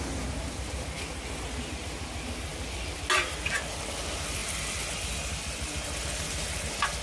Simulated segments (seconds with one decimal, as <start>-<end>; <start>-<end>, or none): none